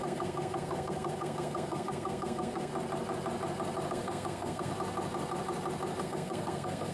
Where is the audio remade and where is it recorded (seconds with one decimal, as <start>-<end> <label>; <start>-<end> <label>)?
0.0-2.7 remade; 2.7-3.9 recorded; 3.9-4.7 remade; 4.7-6.0 recorded; 6.0-6.9 remade